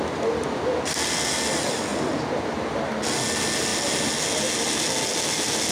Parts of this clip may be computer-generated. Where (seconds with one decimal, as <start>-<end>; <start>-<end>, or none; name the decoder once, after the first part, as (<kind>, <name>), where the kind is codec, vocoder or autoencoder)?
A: none